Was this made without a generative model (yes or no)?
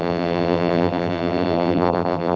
no